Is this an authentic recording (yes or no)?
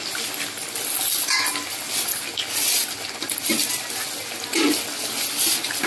yes